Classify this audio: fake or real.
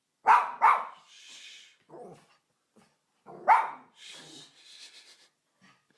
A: real